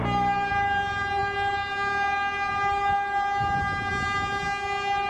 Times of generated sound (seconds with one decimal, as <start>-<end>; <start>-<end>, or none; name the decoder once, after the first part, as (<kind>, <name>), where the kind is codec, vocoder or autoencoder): none